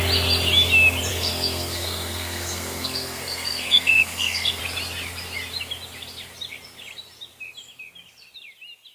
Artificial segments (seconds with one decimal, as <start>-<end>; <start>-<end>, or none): 1.1-4.6